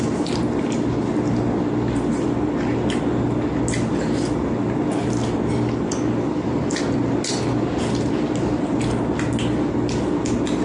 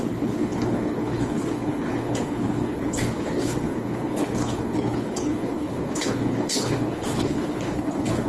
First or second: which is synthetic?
second